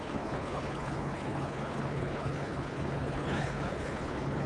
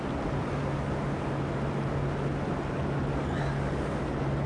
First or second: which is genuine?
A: second